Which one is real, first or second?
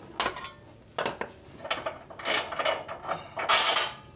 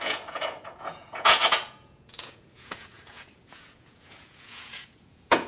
first